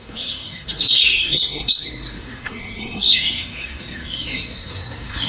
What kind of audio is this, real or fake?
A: fake